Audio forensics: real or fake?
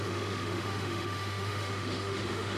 fake